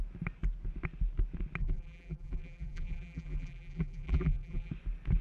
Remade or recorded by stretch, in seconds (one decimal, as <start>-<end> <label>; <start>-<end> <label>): 0.0-1.6 recorded; 1.6-4.7 remade; 4.7-5.2 recorded